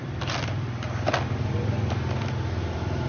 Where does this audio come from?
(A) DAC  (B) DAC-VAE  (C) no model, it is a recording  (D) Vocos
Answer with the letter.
C